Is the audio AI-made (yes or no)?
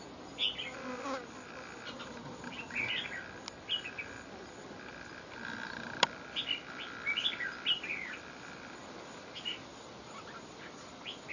no